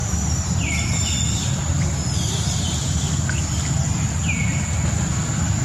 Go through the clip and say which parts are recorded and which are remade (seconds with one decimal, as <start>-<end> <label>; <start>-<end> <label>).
0.0-3.4 remade; 3.4-5.6 recorded